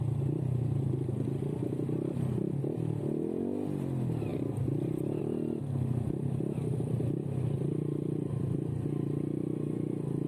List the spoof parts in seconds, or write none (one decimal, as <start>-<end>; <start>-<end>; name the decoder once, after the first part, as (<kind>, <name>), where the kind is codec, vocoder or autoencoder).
none